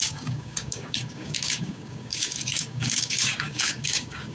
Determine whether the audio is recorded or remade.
remade